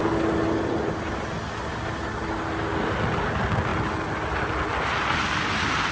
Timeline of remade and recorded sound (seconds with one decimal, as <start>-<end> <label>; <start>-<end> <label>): 0.0-5.9 recorded